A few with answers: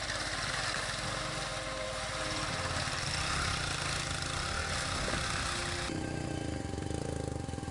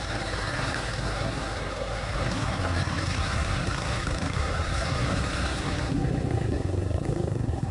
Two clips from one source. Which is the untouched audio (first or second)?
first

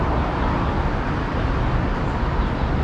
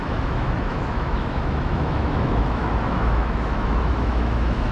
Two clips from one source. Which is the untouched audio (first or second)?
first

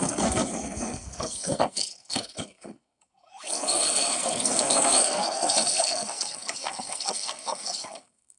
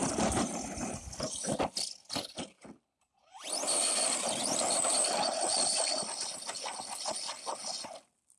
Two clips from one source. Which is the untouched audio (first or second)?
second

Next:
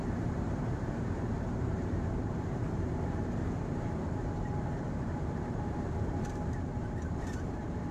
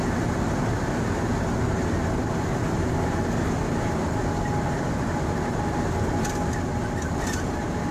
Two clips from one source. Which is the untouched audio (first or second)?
second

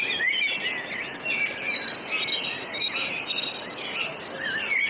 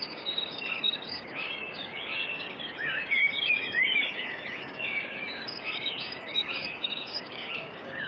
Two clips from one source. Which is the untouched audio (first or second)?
first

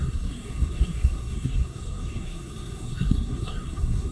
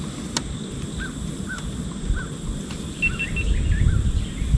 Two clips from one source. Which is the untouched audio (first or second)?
second